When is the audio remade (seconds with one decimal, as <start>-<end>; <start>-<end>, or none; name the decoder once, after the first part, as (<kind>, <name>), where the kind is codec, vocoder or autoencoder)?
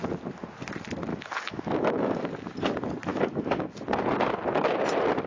1.1-2.3 (autoencoder, DAC-VAE); 3.1-3.7